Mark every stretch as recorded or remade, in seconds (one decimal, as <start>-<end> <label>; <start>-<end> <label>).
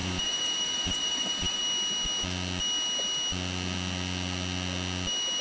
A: 0.0-1.6 remade; 1.6-5.4 recorded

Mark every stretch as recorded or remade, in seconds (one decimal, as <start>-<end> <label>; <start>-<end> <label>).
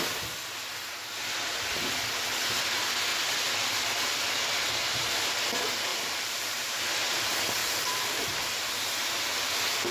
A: 0.0-5.9 recorded; 5.9-6.8 remade; 6.8-7.6 recorded; 7.6-8.7 remade; 8.7-9.9 recorded